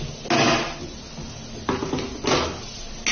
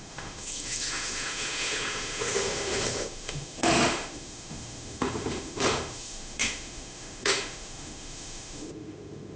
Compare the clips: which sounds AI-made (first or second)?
second